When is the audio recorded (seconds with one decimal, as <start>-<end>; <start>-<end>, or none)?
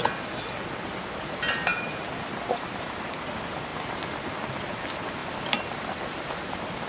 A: 0.0-1.7; 3.2-6.9